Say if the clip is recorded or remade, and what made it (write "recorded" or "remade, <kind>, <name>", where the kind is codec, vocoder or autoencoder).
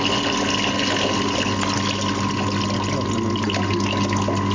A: recorded